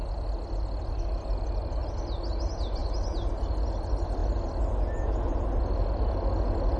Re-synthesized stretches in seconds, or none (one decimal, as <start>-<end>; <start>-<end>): none